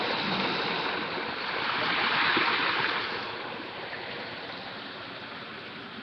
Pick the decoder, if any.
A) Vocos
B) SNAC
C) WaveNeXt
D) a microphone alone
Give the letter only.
D